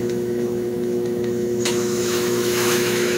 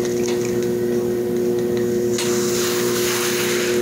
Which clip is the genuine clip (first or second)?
second